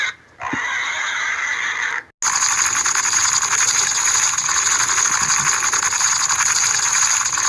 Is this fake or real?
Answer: real